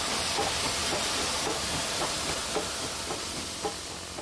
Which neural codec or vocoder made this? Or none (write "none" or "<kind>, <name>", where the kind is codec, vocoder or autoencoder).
none